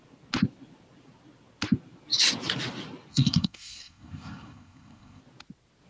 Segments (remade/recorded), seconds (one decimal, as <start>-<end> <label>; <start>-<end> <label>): 0.0-3.1 recorded; 3.1-5.2 remade; 5.2-5.9 recorded